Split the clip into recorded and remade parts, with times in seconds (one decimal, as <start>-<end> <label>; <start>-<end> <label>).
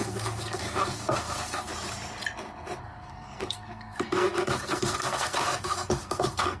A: 0.0-1.7 remade; 1.7-2.8 recorded; 2.8-6.6 remade